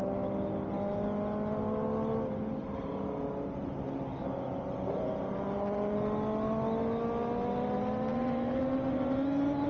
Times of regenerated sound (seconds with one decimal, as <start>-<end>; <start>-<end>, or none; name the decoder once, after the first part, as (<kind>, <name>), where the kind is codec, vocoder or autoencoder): none